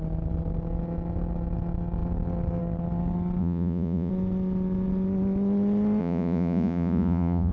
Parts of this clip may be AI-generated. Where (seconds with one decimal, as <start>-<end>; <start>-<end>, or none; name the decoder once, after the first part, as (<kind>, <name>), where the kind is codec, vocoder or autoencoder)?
3.4-4.1 (vocoder, Vocos); 6.0-7.5